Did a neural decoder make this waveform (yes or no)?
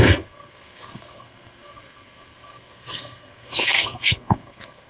yes